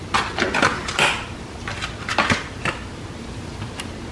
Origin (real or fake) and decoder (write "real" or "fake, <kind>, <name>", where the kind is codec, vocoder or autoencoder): real